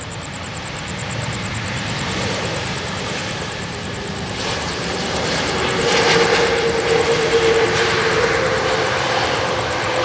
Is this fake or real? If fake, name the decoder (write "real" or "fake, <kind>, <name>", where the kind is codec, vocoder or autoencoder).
fake, vocoder, BigVGAN v2